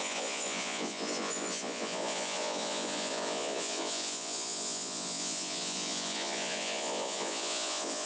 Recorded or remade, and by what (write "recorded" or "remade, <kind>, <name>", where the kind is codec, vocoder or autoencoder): remade, vocoder, Vocos